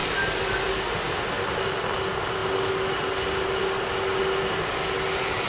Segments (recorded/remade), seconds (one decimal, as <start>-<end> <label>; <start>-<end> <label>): 0.0-5.5 recorded